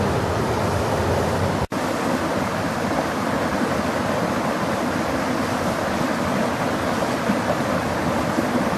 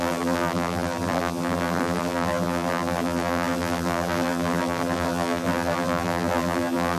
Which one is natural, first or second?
first